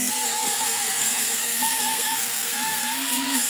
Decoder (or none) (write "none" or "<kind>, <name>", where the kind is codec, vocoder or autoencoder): codec, SNAC